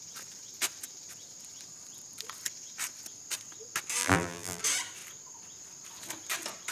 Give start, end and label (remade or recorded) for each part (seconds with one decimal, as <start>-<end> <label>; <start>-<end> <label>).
0.0-4.0 recorded; 4.0-4.6 remade; 4.6-6.7 recorded